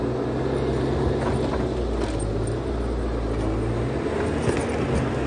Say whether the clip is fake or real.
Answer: real